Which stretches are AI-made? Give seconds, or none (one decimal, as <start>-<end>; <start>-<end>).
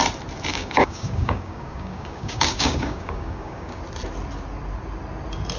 0.5-3.8